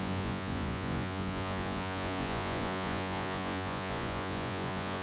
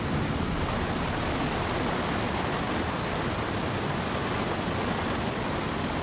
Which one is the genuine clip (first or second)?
second